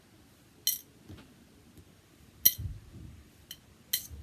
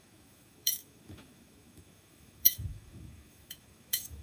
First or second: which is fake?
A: second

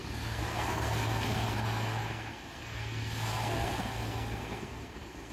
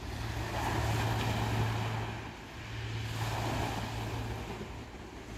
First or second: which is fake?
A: first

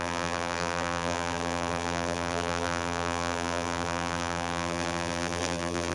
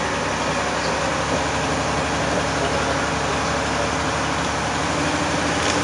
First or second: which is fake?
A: first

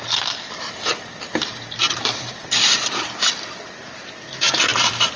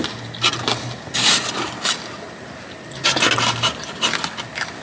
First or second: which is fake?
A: first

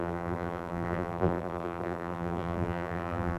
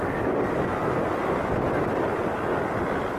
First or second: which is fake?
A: first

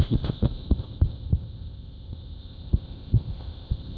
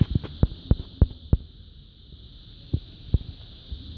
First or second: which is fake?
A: first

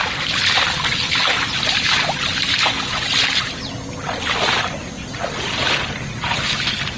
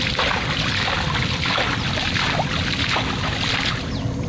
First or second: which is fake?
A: second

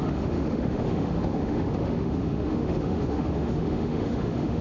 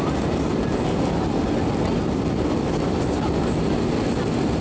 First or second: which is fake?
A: first